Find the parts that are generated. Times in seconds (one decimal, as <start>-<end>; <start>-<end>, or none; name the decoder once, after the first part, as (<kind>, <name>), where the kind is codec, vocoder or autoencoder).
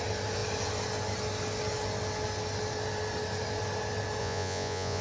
4.2-5.0 (vocoder, Vocos)